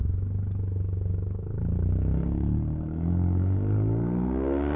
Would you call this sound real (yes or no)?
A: no